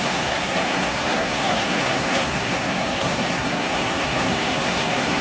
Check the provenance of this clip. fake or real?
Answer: fake